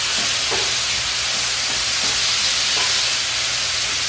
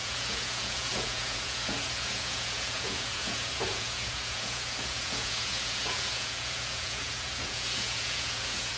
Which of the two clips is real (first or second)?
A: first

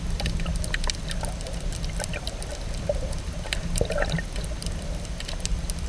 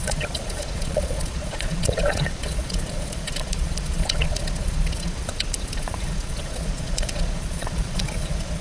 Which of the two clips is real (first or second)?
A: first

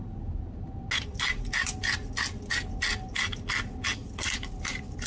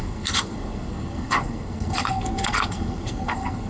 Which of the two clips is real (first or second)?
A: first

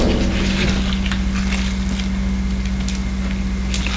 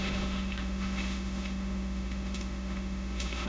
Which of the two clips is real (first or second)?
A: first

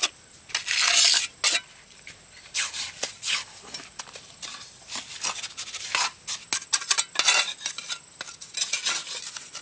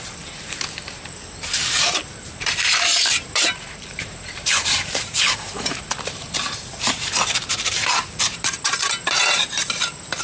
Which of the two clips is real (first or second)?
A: first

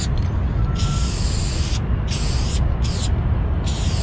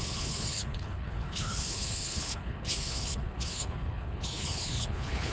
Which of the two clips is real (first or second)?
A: first